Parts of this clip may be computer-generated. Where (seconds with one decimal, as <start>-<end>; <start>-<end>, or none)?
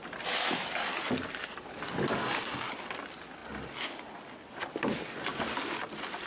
2.2-2.7